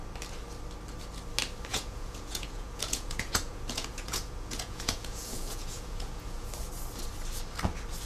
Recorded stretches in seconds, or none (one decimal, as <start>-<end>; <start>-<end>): 0.0-1.7; 6.5-8.1